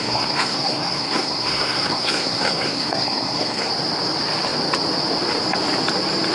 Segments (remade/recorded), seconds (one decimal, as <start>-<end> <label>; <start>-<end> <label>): 0.0-3.7 remade; 3.7-6.3 recorded